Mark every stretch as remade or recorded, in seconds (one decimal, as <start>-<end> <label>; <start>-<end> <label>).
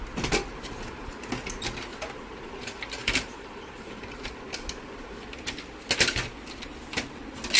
0.0-1.9 recorded; 1.9-2.5 remade; 2.5-3.0 recorded; 3.0-4.0 remade; 4.0-7.6 recorded